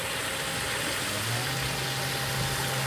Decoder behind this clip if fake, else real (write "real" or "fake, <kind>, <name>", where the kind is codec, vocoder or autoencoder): real